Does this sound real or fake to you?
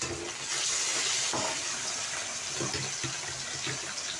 real